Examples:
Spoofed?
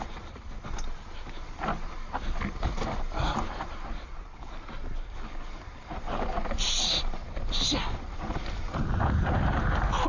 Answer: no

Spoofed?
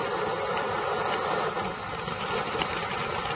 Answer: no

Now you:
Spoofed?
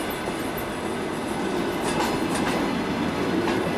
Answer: no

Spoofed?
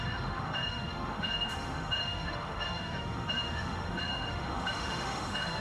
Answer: yes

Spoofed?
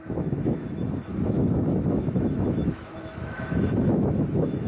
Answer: yes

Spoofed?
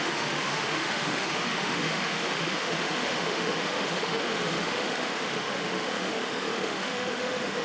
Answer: yes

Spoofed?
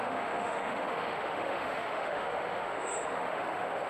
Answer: yes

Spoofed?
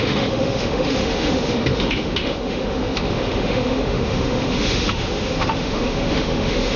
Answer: yes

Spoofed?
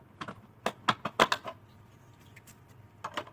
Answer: no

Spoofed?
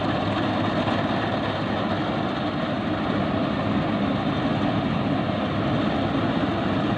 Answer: no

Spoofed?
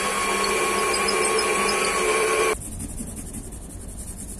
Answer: no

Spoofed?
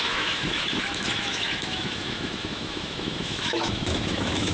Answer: yes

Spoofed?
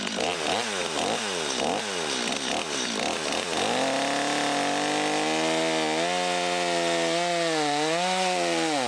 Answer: no